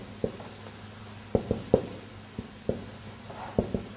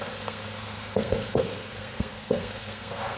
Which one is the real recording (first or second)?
first